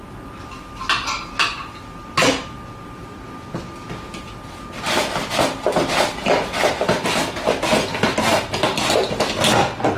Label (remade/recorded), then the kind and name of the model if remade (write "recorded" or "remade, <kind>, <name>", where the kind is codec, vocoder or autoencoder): recorded